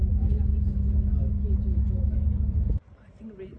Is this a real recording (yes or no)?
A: no